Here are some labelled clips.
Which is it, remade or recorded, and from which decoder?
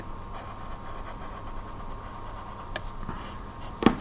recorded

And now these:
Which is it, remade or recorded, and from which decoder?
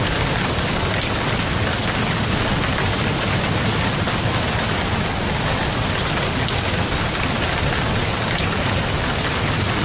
recorded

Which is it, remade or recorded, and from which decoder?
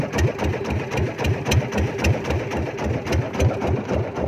recorded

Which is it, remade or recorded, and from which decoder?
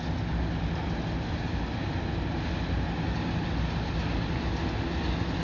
recorded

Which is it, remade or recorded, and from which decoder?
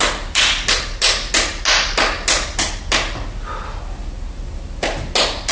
recorded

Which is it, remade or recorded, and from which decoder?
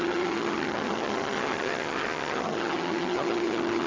remade, vocoder, HiFi-GAN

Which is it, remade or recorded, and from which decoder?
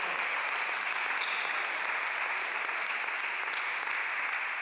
recorded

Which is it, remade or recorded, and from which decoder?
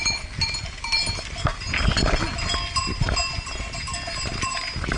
recorded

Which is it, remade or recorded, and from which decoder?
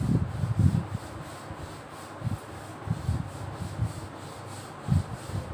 recorded